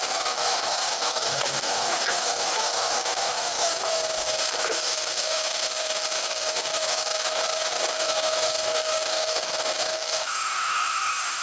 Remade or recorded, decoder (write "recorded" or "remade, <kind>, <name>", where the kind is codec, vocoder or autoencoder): remade, codec, DAC